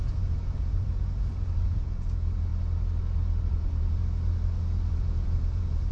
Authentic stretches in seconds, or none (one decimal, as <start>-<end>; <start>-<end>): 2.5-3.5; 4.0-4.9